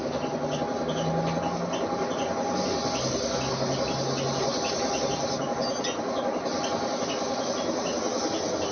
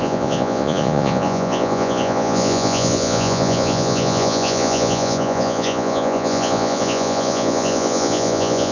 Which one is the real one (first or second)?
first